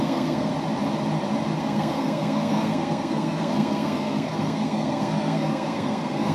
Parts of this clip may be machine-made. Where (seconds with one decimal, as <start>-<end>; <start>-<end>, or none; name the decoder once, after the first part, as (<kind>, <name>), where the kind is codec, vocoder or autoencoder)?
0.0-0.5 (codec, SNAC); 1.6-6.3